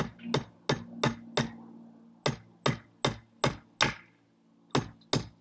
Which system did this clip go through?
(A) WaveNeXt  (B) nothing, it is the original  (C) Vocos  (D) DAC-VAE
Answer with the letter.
B